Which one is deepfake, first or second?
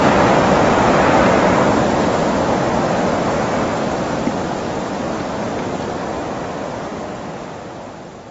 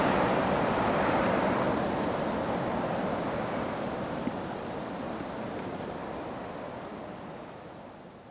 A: second